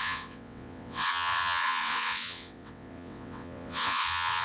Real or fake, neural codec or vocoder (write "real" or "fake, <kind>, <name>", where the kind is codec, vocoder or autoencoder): fake, vocoder, WaveNeXt